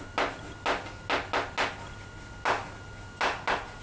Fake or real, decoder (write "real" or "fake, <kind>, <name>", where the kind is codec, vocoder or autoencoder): real